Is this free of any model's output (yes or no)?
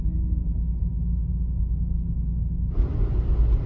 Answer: yes